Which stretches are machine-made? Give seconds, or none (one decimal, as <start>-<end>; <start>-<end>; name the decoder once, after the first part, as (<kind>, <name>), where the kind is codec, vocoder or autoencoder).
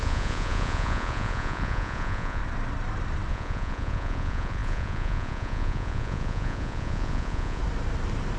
0.0-2.4 (vocoder, Vocos); 3.3-7.6